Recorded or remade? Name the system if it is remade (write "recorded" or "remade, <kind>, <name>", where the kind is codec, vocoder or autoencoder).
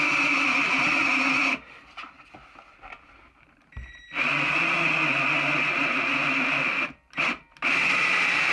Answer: recorded